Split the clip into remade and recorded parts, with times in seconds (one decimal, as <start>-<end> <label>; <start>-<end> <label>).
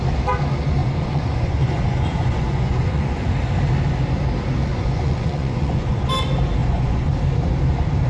0.0-0.8 recorded; 0.8-3.3 remade; 3.3-4.7 recorded; 4.7-6.1 remade; 6.1-6.6 recorded; 6.6-7.1 remade; 7.1-8.1 recorded